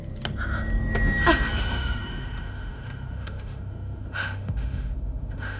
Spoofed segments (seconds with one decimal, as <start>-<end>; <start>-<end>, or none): 1.6-5.6